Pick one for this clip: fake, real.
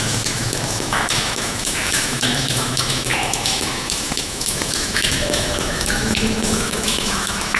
fake